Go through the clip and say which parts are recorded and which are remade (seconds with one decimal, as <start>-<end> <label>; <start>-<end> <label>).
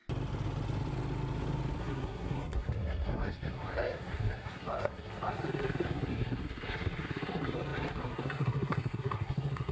0.0-1.8 recorded; 1.8-9.7 remade